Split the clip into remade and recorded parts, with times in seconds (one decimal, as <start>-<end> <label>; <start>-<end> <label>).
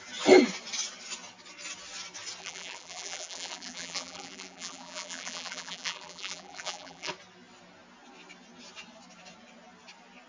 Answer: 0.0-2.4 recorded; 2.4-7.1 remade; 7.1-10.3 recorded